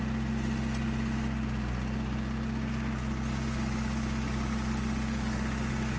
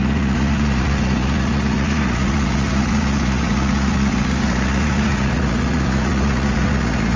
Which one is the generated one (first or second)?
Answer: second